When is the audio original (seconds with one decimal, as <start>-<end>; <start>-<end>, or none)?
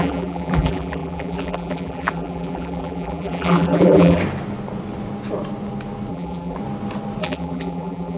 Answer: 4.2-6.1; 6.6-7.2